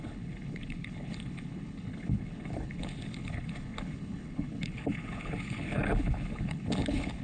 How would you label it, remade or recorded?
remade